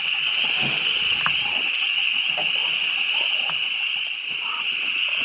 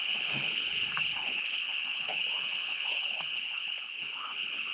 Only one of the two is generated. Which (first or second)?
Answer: second